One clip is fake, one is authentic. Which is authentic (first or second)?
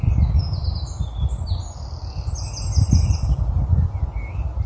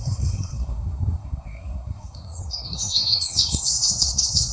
first